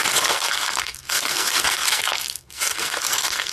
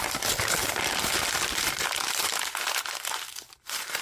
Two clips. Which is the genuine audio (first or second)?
second